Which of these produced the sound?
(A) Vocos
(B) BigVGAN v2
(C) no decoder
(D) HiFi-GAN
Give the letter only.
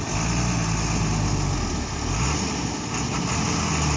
C